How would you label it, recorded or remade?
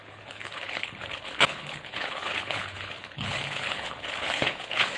remade